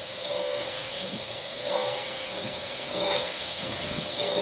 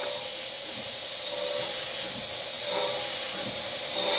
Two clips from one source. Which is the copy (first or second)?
first